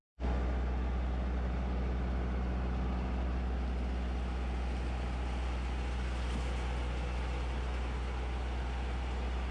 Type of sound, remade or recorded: recorded